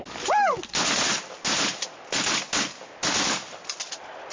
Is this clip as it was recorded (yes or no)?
yes